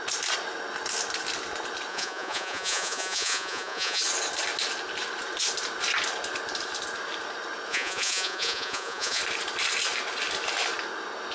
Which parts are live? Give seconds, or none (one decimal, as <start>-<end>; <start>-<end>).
0.0-1.9; 4.0-7.7; 9.2-11.3